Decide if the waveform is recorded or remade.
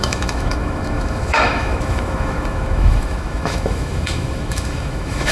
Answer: remade